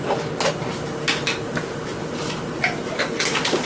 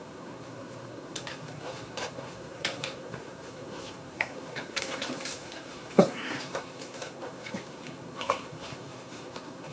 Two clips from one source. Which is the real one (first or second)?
first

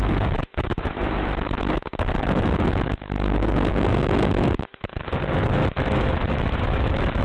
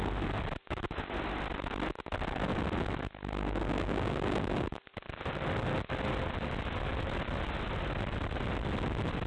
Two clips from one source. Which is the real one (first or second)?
second